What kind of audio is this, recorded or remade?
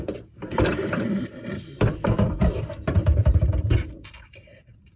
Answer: remade